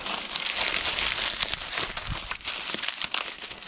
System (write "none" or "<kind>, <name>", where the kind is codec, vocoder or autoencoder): none